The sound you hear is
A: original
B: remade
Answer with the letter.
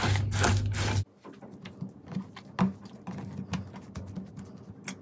A